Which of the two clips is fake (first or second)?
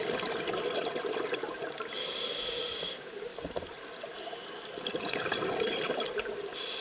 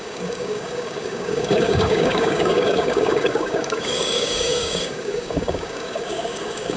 second